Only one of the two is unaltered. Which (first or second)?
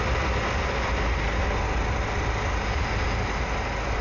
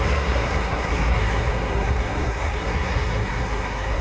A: first